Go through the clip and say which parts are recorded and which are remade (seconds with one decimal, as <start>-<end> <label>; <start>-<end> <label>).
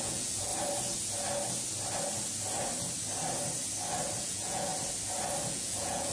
0.0-0.5 remade; 0.5-4.2 recorded; 4.2-4.7 remade; 4.7-5.5 recorded; 5.5-6.1 remade